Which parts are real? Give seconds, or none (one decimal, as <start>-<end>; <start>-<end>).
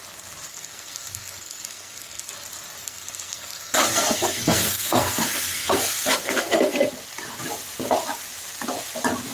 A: 0.0-0.5; 2.3-2.8; 6.9-9.3